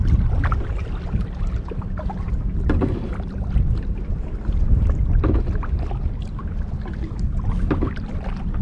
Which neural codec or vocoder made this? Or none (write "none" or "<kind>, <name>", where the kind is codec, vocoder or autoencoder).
none